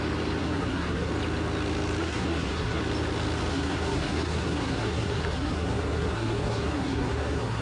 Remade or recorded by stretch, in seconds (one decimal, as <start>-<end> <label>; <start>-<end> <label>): 0.0-0.4 recorded; 0.4-1.1 remade; 1.1-2.0 recorded; 2.0-2.8 remade; 2.8-3.5 recorded; 3.5-7.6 remade